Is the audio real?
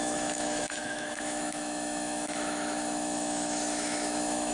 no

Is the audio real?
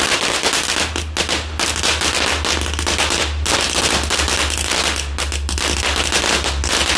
yes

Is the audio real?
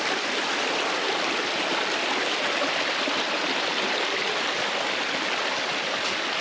yes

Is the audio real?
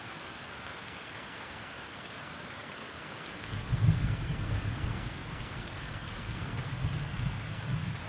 no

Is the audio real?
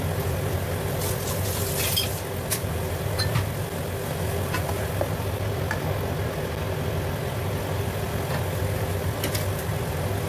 yes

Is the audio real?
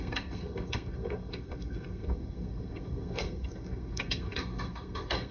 no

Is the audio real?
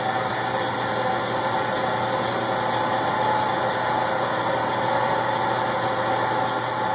yes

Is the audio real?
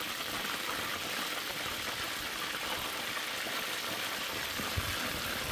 yes